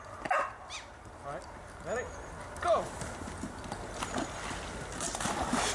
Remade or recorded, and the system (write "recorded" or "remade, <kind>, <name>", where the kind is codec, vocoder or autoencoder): recorded